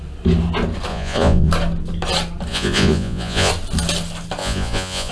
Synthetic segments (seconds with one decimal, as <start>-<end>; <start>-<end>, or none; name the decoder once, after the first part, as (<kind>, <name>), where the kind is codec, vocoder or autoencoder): 0.9-1.5 (vocoder, Vocos); 2.5-3.5; 4.4-5.1